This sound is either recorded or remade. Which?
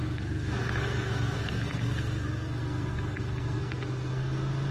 remade